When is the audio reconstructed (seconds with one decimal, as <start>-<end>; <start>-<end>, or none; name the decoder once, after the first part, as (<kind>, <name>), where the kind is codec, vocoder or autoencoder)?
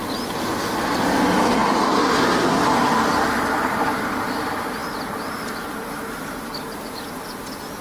1.6-2.2 (vocoder, BigVGAN v2); 4.8-5.7